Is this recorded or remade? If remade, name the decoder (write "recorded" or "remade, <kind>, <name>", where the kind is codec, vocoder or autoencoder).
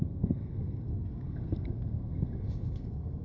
remade, codec, SNAC